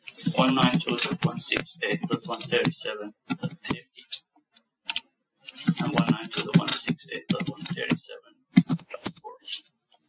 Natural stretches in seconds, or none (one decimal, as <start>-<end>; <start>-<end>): 0.0-8.7; 9.5-10.1